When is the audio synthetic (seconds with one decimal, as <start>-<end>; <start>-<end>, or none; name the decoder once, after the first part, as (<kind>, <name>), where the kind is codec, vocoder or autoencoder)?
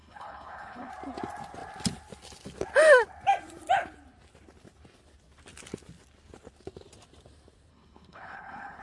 0.0-0.9 (codec, HILCodec); 7.7-8.8